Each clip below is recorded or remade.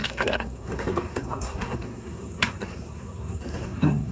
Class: remade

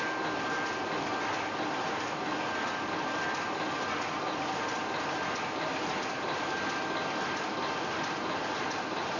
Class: recorded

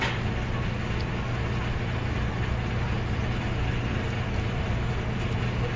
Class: recorded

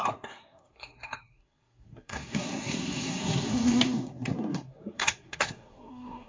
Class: remade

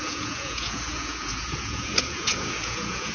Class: remade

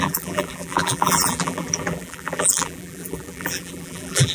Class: remade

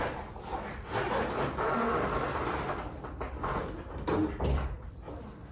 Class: recorded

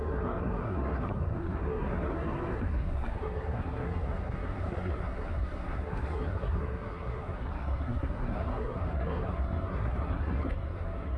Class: remade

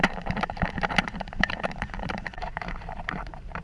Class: remade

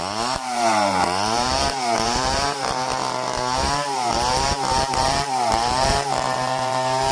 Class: remade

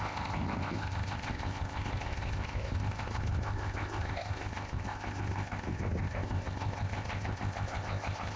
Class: remade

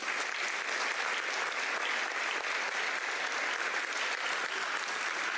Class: recorded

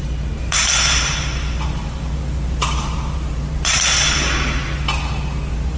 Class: remade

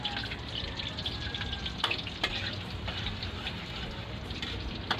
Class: remade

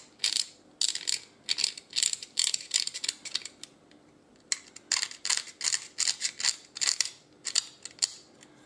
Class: recorded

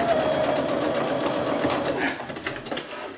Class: recorded